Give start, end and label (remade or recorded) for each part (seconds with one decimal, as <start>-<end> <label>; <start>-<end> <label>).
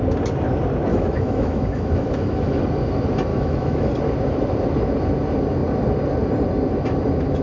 0.0-0.9 recorded; 0.9-2.6 remade; 2.6-3.3 recorded; 3.3-3.9 remade; 3.9-7.4 recorded